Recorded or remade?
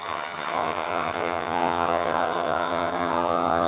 remade